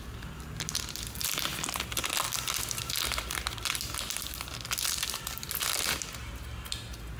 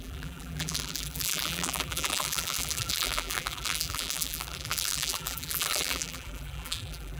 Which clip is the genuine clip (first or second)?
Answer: first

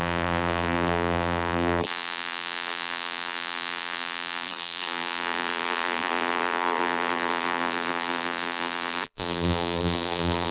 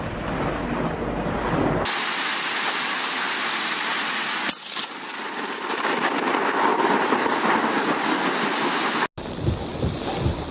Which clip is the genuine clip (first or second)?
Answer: second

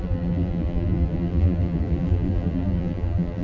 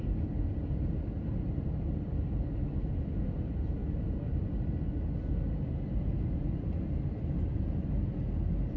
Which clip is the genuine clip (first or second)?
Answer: second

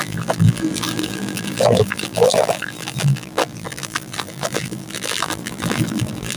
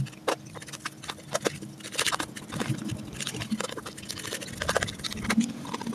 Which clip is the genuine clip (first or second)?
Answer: second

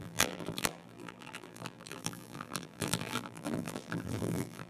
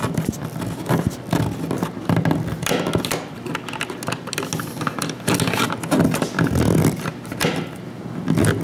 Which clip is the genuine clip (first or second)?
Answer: second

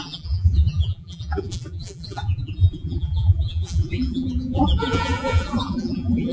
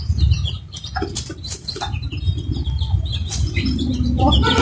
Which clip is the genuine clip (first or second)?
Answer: second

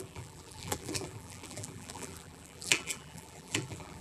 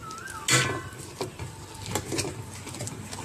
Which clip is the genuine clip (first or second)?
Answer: second